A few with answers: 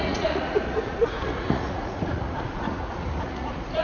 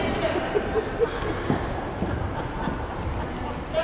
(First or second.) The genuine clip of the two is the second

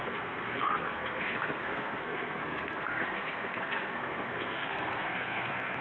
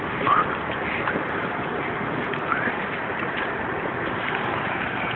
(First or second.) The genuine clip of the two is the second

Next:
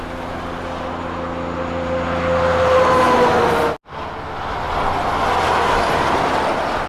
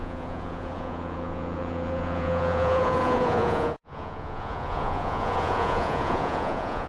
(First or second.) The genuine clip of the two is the first